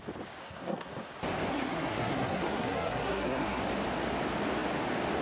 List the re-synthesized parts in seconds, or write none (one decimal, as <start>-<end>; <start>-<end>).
0.4-1.1; 1.5-3.6